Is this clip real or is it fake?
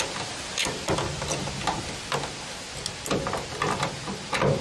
real